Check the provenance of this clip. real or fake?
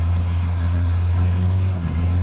fake